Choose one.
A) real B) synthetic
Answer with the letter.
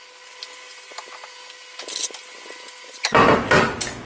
A